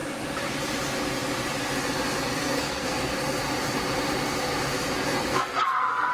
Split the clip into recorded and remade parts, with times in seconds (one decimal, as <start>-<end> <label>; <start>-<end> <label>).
0.0-2.3 recorded; 2.3-3.2 remade; 3.2-5.3 recorded; 5.3-6.1 remade